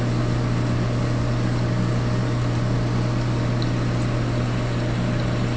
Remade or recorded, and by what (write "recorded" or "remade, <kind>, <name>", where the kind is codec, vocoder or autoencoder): recorded